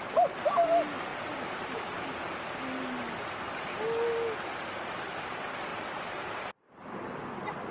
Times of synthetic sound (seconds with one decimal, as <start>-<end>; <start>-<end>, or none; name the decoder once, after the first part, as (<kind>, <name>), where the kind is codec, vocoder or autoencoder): 1.1-2.2 (vocoder, BigVGAN v2)